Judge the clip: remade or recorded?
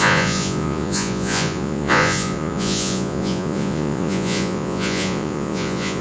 remade